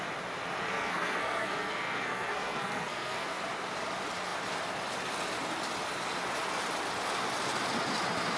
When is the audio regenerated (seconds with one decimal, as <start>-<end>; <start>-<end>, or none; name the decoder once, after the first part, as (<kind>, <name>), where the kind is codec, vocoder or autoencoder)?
0.7-3.4 (codec, SNAC)